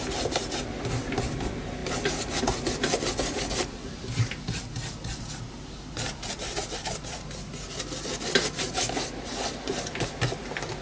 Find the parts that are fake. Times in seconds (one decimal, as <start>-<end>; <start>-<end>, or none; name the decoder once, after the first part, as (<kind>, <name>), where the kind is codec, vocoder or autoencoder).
none